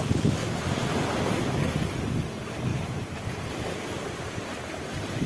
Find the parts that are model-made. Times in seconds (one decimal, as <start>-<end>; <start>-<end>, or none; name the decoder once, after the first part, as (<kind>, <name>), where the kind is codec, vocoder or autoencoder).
2.7-3.5 (vocoder, BigVGAN v2)